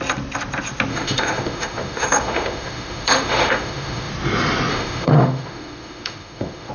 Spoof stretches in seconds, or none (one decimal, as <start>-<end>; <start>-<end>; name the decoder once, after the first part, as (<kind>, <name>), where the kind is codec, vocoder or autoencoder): 0.9-4.1 (autoencoder, DAC-VAE); 4.7-6.7